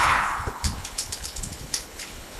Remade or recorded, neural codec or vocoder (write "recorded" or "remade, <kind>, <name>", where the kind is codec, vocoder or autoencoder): remade, codec, HILCodec